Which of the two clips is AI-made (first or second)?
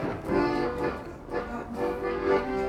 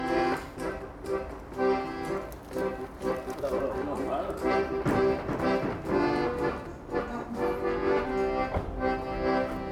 first